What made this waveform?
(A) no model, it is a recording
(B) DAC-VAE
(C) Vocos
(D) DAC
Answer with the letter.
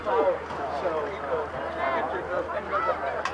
A